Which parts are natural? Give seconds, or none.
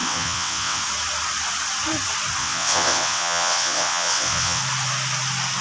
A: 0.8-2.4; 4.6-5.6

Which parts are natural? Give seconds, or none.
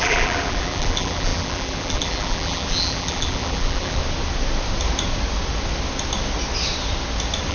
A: 4.0-7.5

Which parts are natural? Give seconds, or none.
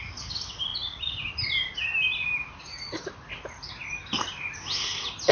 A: 0.0-5.3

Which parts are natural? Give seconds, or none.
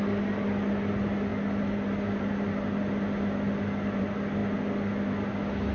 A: 0.0-5.7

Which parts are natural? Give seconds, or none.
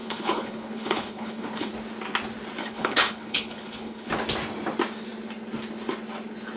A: 1.7-2.6; 4.1-6.6